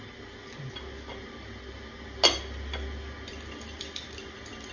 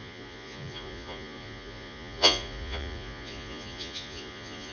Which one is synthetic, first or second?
second